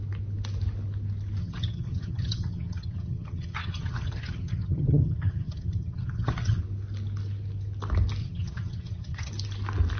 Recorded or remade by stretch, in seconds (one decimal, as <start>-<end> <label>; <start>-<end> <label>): 0.0-1.4 recorded; 1.4-6.6 remade; 6.6-8.2 recorded; 8.2-9.3 remade; 9.3-10.0 recorded